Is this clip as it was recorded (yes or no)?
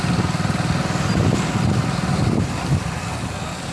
yes